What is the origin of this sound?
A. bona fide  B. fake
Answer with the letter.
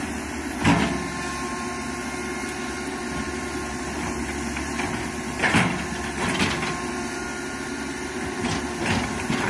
A